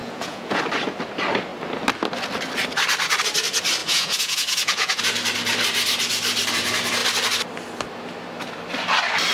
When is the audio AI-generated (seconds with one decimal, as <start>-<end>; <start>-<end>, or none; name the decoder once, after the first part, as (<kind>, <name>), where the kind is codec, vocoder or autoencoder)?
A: 0.0-0.6 (vocoder, Vocos); 3.8-5.0